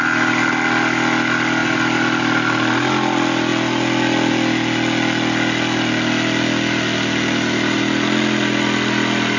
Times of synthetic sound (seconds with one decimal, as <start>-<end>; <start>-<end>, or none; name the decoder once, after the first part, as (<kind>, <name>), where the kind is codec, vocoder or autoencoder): none